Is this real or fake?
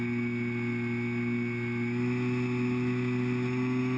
real